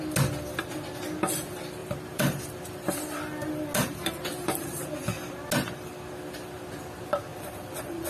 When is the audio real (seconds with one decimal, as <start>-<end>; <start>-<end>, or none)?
0.0-1.8; 3.1-7.3